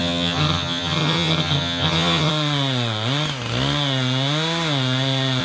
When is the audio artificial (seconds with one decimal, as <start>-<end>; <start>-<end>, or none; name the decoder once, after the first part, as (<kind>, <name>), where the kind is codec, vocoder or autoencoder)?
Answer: 0.0-2.3 (vocoder, HiFi-GAN)